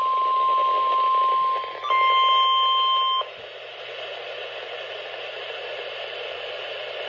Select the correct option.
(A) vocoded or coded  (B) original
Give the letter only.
B